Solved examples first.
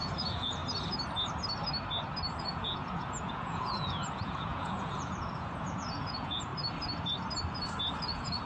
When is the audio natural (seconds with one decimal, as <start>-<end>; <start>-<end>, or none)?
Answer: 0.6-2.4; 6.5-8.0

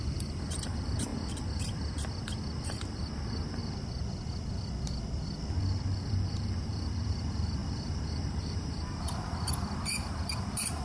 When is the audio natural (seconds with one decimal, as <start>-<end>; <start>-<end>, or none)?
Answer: 1.1-2.6; 3.6-6.0

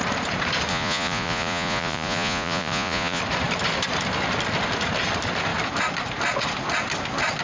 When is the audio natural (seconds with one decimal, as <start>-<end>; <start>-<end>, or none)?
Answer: 0.0-0.7; 3.2-7.4

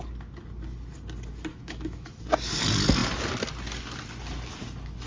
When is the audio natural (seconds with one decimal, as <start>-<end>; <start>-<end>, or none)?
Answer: 0.0-1.5; 2.2-5.1

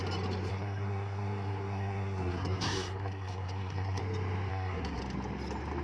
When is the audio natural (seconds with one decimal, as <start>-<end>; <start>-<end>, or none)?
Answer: 0.0-0.5; 4.0-4.5; 5.0-5.8

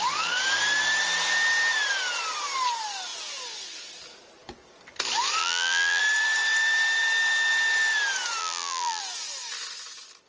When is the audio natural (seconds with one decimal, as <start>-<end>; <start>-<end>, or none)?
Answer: 0.0-5.4; 6.0-8.4; 9.0-10.3

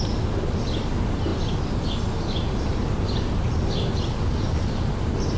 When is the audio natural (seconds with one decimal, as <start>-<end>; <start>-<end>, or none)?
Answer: 0.0-5.4

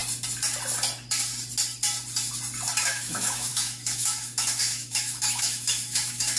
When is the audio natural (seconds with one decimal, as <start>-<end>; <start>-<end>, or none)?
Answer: 0.0-2.8